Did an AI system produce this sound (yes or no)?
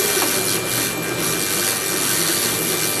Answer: no